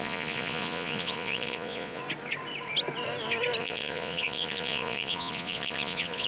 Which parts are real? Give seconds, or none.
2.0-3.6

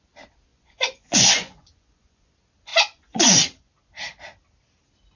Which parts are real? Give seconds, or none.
0.0-0.5; 2.3-2.7; 3.7-5.2

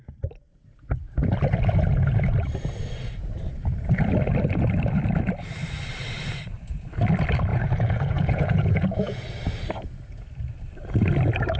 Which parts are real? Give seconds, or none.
0.0-7.5; 9.2-11.6

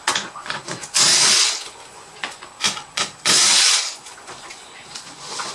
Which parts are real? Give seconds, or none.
1.0-1.6

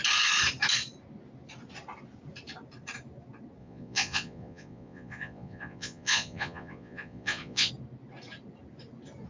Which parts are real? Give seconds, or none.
0.0-3.6; 7.7-9.3

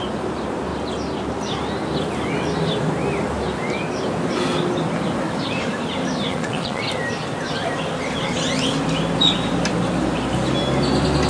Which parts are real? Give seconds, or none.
0.0-6.3; 6.8-11.3